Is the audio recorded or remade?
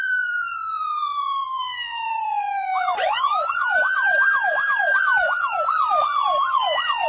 remade